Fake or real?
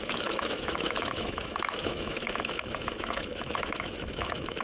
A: fake